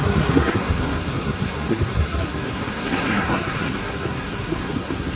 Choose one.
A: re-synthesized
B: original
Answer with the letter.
A